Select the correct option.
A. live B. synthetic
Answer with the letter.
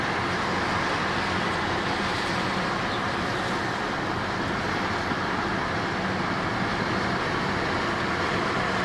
A